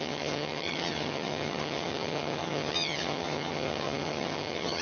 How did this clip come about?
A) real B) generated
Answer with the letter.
B